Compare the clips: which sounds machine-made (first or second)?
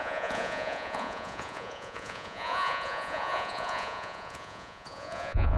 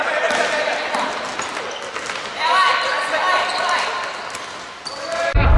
first